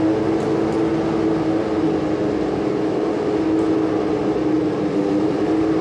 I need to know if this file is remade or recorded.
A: recorded